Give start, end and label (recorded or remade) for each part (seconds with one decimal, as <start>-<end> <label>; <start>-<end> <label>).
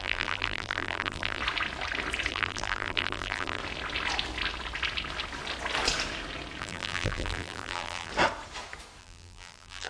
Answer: 0.0-1.4 remade; 1.4-2.3 recorded; 2.3-3.6 remade; 3.6-6.6 recorded; 6.6-8.1 remade; 8.1-9.0 recorded; 9.0-9.9 remade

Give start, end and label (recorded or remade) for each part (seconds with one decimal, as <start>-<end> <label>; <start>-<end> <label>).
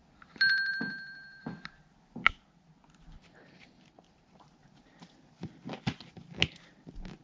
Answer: 0.0-0.7 remade; 0.7-1.4 recorded; 1.4-2.3 remade; 2.3-7.2 recorded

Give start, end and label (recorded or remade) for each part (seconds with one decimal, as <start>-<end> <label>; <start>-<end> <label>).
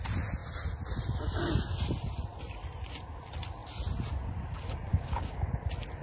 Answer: 0.0-4.9 recorded; 4.9-5.5 remade; 5.5-6.0 recorded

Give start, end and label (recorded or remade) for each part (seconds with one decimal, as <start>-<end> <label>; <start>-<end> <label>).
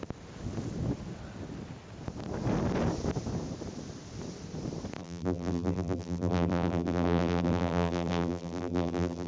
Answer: 0.0-5.0 recorded; 5.0-9.3 remade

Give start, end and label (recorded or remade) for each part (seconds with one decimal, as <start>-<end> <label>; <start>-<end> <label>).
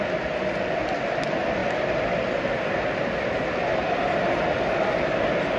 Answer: 0.0-5.6 recorded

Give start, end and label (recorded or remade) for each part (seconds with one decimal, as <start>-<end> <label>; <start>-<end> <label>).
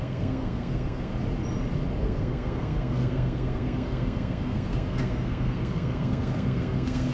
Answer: 0.0-1.1 remade; 1.1-2.0 recorded; 2.0-7.1 remade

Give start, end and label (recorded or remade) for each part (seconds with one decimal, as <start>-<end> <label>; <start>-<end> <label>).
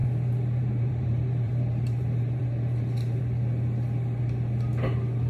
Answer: 0.0-3.2 remade; 3.2-5.3 recorded